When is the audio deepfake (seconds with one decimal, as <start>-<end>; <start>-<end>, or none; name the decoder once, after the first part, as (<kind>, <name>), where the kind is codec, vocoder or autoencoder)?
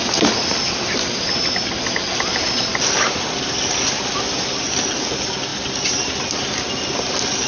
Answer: none